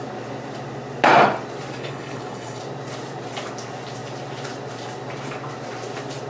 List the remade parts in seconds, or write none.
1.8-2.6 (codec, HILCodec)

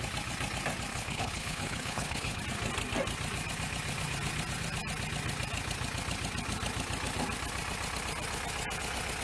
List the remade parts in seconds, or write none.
0.9-2.4 (codec, HILCodec)

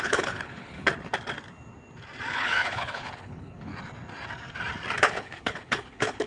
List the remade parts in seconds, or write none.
0.0-0.9 (codec, HILCodec); 2.3-3.7; 5.0-6.3